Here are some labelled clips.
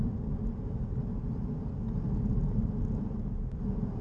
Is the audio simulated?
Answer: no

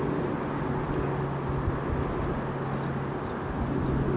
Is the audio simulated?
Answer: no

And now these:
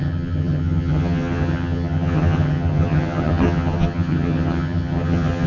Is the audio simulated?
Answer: yes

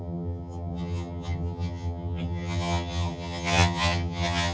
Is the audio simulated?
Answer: yes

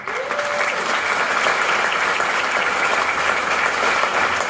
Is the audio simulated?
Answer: no